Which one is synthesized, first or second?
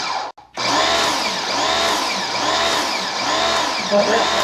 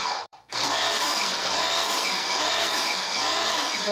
second